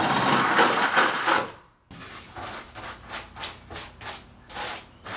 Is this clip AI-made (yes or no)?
no